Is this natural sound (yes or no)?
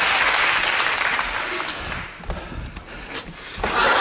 yes